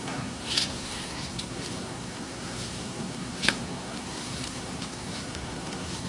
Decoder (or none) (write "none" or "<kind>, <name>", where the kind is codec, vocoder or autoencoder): codec, SNAC